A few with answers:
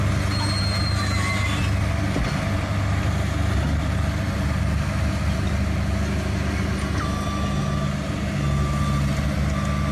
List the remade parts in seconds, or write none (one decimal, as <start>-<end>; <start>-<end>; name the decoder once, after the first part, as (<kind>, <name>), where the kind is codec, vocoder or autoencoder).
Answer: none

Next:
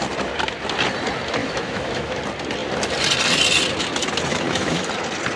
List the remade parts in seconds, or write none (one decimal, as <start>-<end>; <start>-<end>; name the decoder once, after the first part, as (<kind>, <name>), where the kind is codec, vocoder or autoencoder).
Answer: 1.4-2.2 (autoencoder, DAC-VAE); 4.3-4.9

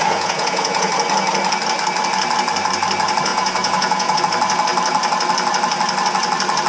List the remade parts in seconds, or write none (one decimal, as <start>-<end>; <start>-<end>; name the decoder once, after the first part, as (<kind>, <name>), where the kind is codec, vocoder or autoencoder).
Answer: 0.0-0.9 (vocoder, Vocos); 3.3-4.2